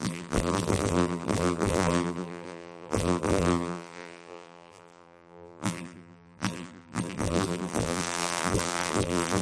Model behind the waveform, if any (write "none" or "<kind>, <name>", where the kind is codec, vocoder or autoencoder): vocoder, BigVGAN v2